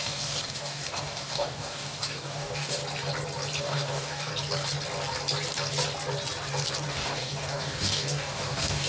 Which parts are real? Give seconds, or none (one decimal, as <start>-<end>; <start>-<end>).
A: 2.8-3.6; 4.3-6.9